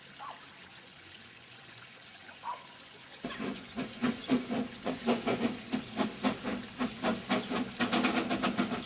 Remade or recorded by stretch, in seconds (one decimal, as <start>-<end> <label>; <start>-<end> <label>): 0.0-0.7 recorded; 0.7-5.4 remade; 5.4-8.9 recorded